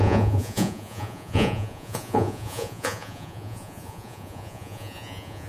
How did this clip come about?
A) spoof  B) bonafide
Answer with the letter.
A